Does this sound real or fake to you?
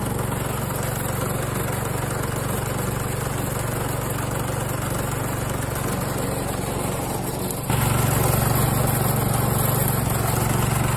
real